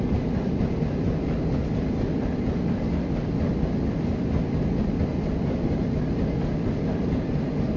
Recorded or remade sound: recorded